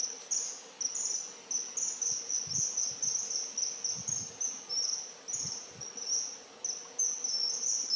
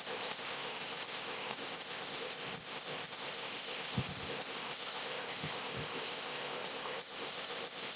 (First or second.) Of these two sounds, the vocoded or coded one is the second